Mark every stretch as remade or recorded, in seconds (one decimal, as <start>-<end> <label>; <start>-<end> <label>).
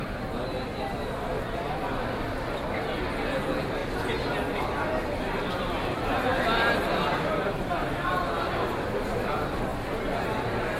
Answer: 0.0-10.8 recorded